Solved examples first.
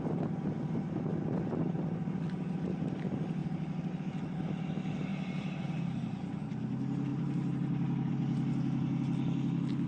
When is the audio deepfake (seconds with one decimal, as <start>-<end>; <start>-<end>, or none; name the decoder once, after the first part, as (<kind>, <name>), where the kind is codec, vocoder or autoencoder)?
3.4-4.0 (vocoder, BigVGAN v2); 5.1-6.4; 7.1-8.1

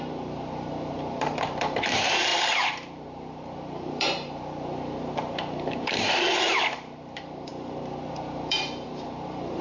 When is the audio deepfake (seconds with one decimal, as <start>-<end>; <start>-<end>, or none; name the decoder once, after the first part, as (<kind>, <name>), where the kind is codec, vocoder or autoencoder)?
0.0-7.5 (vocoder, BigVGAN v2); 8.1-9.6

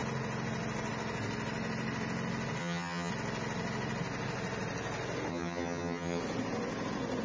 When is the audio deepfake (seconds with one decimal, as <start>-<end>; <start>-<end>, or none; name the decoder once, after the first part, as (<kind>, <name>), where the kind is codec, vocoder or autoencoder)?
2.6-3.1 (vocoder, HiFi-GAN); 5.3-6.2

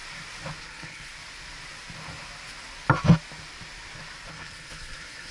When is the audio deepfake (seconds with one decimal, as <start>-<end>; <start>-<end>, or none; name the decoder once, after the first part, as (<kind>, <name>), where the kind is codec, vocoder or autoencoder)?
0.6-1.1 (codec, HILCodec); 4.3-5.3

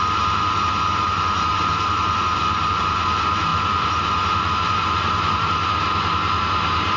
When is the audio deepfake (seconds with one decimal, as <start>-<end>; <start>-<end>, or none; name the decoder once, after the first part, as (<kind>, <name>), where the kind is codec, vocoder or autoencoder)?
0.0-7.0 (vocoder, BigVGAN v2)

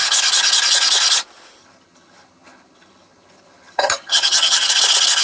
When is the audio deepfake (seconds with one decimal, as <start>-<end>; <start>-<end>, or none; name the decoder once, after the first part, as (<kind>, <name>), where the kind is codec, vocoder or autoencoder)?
1.6-4.7 (vocoder, HiFi-GAN)

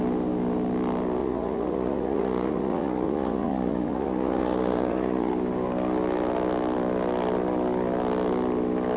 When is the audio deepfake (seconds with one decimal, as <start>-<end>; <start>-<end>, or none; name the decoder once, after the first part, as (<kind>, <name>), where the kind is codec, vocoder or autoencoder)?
1.2-5.3 (vocoder, Vocos)